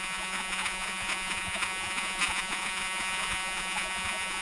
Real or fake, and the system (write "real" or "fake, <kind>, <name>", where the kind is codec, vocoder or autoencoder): fake, vocoder, Vocos